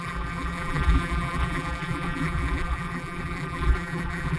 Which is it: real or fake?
fake